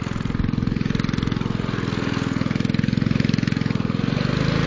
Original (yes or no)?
yes